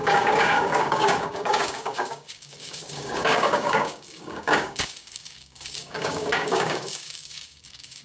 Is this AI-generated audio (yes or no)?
yes